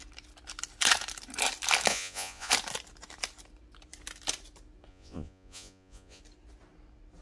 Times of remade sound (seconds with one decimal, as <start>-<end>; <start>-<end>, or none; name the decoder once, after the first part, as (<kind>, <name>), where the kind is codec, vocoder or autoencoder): 1.9-2.5 (vocoder, Vocos); 4.9-6.2